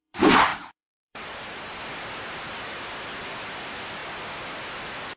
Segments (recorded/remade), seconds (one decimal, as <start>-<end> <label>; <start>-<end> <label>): 0.0-4.0 remade; 4.0-4.8 recorded; 4.8-5.2 remade